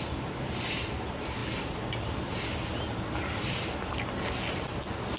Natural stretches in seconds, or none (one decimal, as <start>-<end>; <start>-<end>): 0.0-5.2